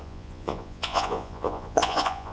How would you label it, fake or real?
fake